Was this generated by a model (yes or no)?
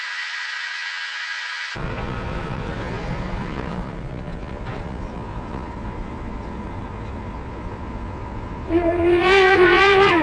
yes